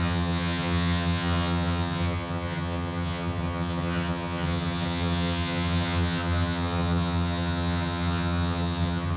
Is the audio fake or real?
fake